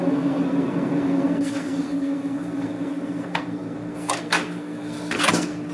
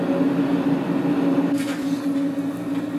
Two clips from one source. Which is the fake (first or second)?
first